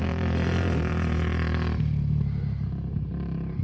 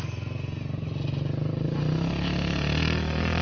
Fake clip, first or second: first